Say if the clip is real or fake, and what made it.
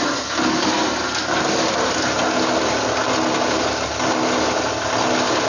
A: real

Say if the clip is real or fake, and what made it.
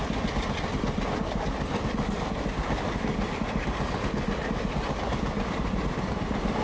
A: real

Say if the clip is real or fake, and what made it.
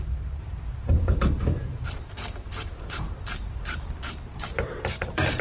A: fake, vocoder, BigVGAN v2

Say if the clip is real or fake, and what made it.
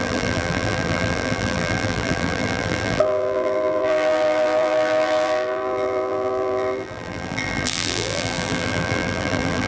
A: fake, vocoder, BigVGAN v2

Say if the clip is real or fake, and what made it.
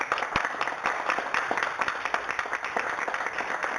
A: real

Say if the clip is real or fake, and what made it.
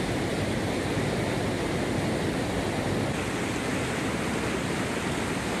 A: real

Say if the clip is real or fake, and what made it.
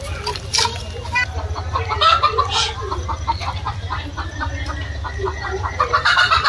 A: fake, vocoder, BigVGAN v2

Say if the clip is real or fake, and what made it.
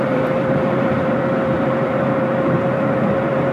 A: fake, vocoder, BigVGAN v2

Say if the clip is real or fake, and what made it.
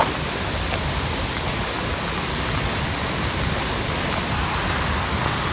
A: real